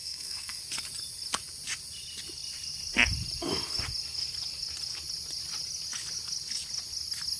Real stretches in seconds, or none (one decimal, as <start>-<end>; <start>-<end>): 0.6-7.4